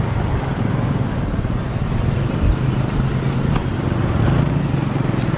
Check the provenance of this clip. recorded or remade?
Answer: recorded